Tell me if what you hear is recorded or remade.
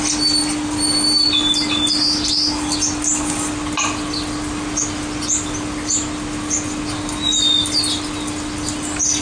recorded